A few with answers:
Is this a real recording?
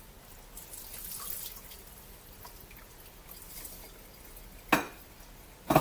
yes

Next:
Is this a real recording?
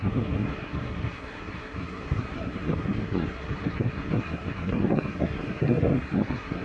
no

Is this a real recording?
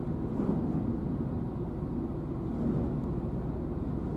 yes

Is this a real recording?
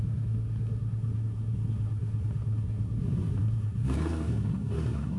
no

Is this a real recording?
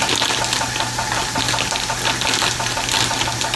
yes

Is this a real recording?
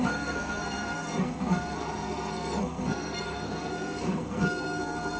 no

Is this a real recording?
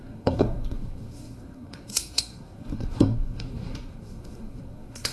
no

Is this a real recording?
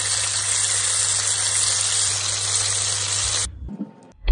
yes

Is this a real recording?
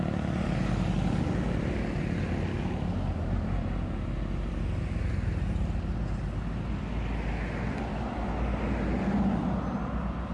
yes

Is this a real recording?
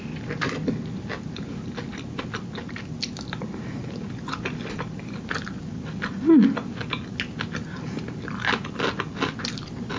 yes